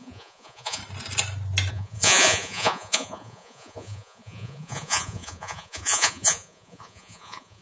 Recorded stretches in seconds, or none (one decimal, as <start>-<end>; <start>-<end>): 0.8-1.7